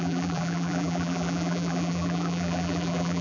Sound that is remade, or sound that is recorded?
remade